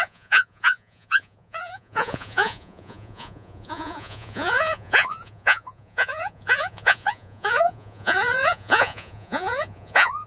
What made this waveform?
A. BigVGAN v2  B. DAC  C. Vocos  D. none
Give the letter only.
C